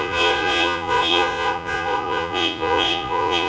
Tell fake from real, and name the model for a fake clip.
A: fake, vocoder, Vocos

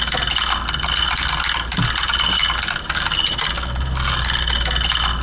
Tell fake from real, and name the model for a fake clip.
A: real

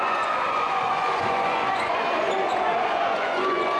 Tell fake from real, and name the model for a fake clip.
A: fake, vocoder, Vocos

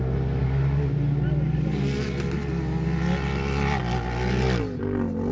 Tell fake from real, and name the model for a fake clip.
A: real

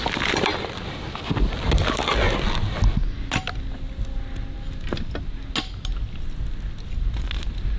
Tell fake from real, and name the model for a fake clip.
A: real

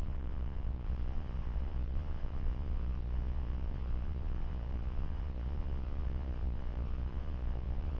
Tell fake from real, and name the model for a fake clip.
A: fake, vocoder, Vocos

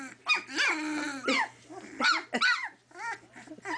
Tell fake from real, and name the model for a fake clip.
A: real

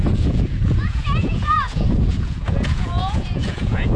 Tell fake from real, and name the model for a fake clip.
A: fake, vocoder, Vocos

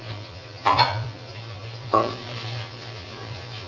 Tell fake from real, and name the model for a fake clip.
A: fake, vocoder, Vocos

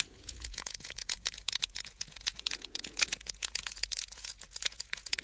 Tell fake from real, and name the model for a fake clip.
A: fake, vocoder, Vocos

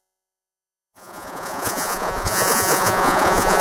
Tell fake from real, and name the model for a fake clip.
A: fake, vocoder, Vocos